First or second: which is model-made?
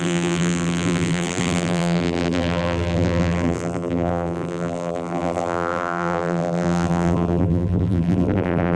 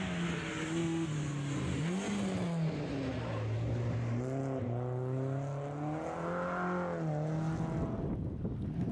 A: first